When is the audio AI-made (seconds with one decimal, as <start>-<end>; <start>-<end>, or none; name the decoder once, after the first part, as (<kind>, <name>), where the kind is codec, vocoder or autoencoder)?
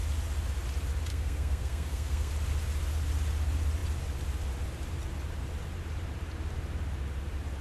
1.1-2.3 (codec, SNAC)